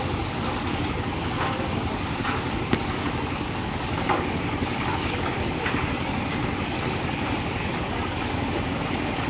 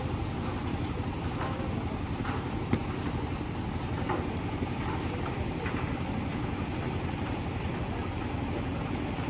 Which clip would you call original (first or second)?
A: second